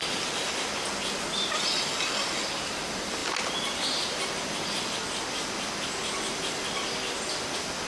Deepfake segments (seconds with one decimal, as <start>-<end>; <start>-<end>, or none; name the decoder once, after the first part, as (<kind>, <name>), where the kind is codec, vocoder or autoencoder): none